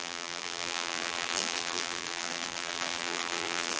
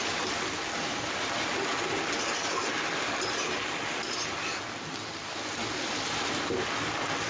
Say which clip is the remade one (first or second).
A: first